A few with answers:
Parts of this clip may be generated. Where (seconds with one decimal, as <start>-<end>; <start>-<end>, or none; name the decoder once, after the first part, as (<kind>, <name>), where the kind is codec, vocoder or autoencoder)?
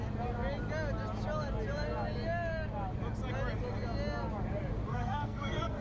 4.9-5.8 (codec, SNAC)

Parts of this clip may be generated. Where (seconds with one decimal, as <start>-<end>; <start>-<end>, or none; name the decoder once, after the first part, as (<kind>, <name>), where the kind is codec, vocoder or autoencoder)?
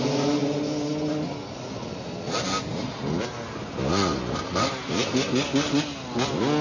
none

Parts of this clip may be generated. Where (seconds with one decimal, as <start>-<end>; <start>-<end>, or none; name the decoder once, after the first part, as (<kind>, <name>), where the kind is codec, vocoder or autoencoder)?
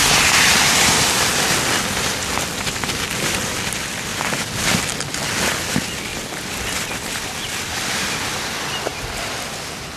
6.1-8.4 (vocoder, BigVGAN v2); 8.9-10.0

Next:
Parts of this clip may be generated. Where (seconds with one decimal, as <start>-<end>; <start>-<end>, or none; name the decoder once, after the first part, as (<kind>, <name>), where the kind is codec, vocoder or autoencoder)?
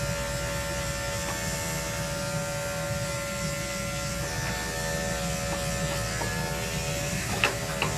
7.1-7.6 (autoencoder, DAC-VAE)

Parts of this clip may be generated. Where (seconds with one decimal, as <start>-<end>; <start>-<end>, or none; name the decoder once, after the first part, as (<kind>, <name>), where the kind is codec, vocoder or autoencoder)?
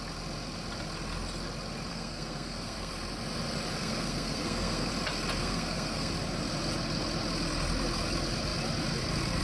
1.9-2.9 (codec, SNAC); 3.8-4.9; 5.4-6.1